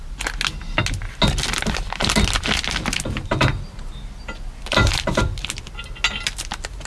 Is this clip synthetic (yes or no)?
no